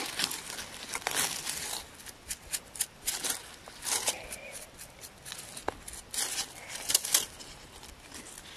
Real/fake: real